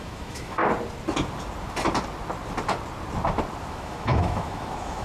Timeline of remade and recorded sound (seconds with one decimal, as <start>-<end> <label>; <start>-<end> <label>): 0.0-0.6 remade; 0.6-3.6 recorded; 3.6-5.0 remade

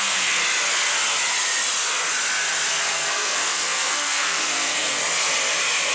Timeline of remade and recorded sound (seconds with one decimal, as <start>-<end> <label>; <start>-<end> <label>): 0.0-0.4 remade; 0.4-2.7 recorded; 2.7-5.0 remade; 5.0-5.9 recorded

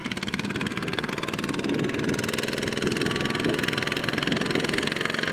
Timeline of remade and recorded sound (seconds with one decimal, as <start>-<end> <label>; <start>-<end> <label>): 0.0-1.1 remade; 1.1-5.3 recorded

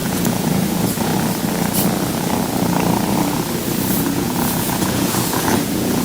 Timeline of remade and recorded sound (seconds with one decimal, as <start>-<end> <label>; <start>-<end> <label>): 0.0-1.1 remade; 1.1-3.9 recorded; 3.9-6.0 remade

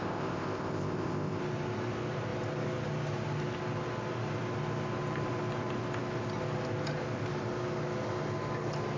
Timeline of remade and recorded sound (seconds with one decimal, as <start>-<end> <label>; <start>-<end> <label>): 0.0-1.4 remade; 1.4-9.0 recorded

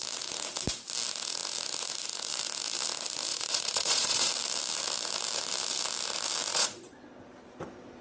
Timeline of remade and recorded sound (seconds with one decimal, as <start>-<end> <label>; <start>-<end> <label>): 0.0-3.3 recorded; 3.3-4.3 remade; 4.3-6.5 recorded; 6.5-7.0 remade; 7.0-8.0 recorded

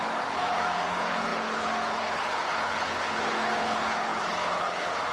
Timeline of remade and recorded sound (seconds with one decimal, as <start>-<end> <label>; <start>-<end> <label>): 0.0-5.1 remade